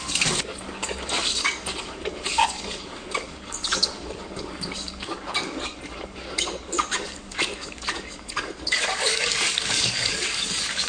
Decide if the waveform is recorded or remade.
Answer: remade